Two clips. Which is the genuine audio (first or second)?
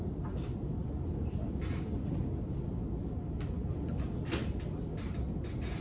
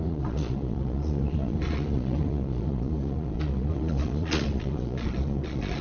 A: first